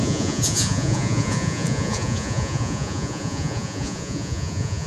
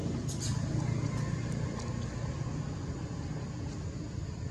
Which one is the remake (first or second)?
first